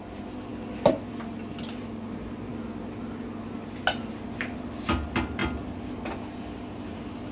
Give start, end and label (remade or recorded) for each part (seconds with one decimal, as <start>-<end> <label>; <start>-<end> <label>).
0.0-7.3 recorded